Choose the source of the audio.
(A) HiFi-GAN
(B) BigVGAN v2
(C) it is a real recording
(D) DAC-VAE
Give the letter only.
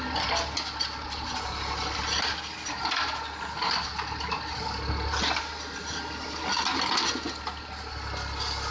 C